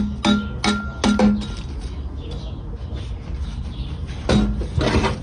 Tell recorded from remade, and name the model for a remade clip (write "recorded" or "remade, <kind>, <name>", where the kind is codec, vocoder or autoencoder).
recorded